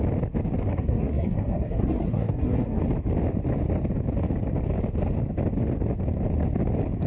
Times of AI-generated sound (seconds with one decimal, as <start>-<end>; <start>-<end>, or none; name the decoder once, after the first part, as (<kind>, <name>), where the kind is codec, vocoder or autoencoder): 0.7-2.8 (codec, SNAC)